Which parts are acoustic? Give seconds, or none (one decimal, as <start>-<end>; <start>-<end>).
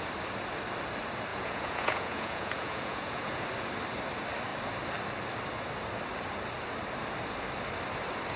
0.0-1.3; 3.4-8.4